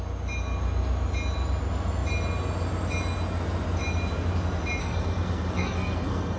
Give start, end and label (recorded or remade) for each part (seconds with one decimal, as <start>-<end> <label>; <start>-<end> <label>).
0.0-4.8 recorded; 4.8-6.4 remade